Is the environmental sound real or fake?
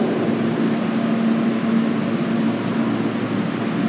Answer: real